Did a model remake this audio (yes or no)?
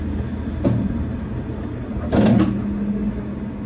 no